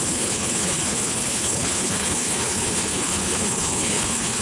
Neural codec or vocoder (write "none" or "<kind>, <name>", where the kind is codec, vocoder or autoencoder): codec, HILCodec